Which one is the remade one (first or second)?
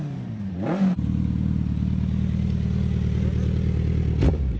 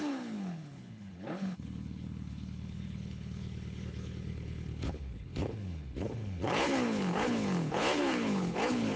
second